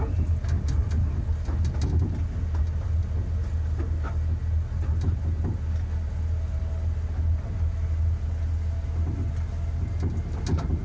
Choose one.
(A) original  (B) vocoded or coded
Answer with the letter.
A